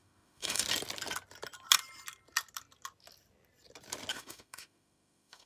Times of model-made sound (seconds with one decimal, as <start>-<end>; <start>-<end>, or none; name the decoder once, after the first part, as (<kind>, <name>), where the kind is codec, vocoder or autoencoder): 0.0-0.6 (autoencoder, DAC-VAE); 4.1-5.5